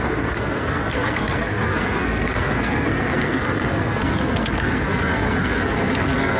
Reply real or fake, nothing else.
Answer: fake